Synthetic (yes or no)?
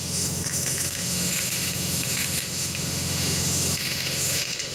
yes